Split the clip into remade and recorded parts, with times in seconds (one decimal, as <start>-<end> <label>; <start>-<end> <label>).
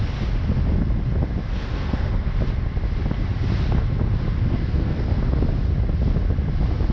0.0-1.5 recorded; 1.5-2.3 remade; 2.3-4.5 recorded; 4.5-5.2 remade; 5.2-6.9 recorded